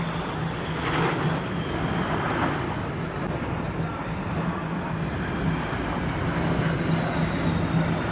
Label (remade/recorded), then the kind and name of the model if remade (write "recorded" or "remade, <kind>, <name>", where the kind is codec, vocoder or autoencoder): recorded